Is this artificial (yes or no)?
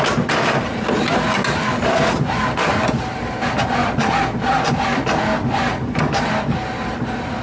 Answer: no